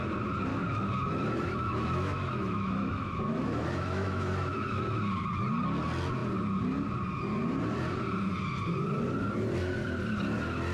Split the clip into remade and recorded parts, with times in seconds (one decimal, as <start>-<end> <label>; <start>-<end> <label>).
0.0-0.5 recorded; 0.5-5.0 remade; 5.0-10.7 recorded